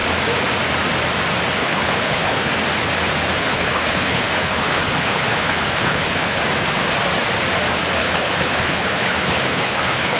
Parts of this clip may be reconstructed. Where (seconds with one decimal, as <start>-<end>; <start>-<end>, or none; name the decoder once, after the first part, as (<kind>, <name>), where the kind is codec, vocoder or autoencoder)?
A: 1.6-2.5 (codec, HILCodec); 3.4-6.4; 8.0-10.2